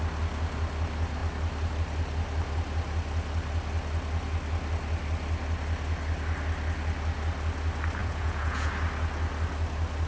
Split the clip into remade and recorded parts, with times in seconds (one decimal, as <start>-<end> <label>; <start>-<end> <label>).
0.0-8.0 recorded; 8.0-8.7 remade; 8.7-10.1 recorded